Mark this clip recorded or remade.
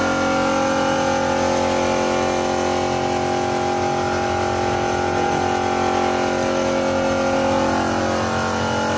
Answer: recorded